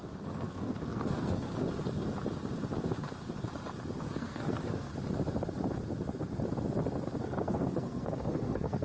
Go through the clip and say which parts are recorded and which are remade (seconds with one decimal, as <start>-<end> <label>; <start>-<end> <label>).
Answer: 0.0-1.5 remade; 1.5-3.9 recorded; 3.9-4.9 remade; 4.9-7.2 recorded; 7.2-8.8 remade